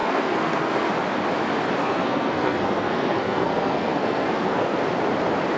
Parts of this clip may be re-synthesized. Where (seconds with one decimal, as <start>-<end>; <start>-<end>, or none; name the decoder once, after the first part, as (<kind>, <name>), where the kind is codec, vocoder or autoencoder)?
0.0-0.9 (codec, SNAC); 1.8-4.8